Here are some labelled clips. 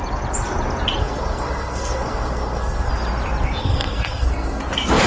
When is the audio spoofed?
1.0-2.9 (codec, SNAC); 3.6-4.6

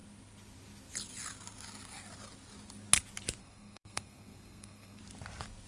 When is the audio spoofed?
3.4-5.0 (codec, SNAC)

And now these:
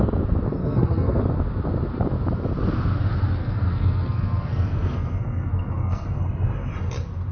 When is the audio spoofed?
0.6-1.2 (codec, SNAC); 3.4-6.2

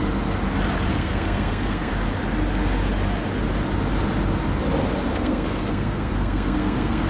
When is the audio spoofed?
0.9-1.9 (codec, SNAC); 5.1-7.1